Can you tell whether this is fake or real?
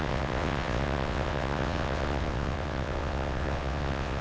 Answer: fake